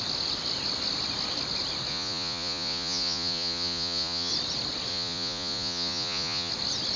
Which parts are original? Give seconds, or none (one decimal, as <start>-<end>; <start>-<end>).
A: 0.0-1.9; 4.3-4.9; 6.5-7.0